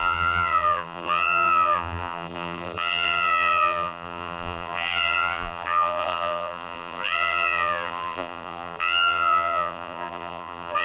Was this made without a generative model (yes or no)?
no